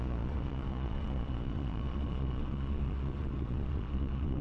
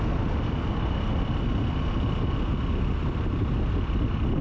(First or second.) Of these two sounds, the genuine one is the second